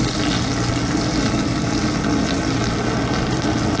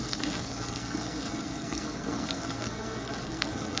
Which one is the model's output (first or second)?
second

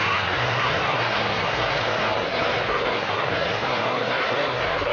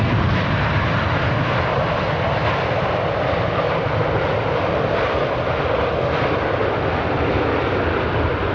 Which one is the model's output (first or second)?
first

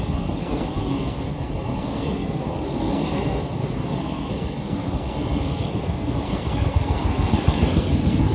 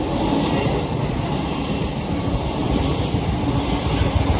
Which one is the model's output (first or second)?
first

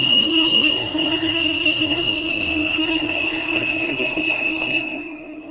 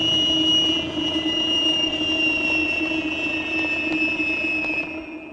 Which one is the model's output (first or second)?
first